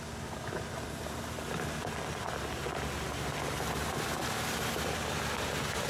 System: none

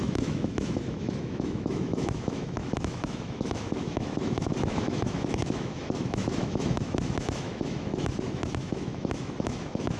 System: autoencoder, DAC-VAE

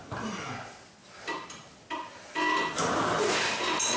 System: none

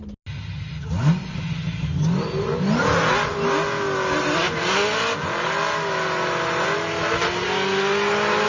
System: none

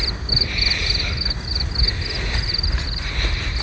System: none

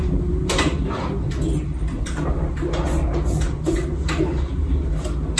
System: none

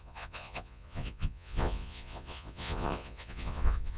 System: vocoder, Vocos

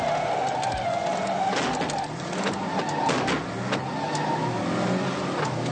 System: none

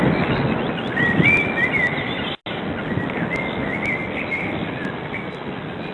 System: none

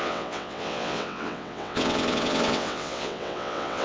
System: vocoder, WaveNeXt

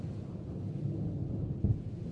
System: none